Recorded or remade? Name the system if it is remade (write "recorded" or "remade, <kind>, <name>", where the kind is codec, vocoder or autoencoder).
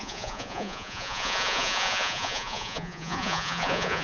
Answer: remade, vocoder, Vocos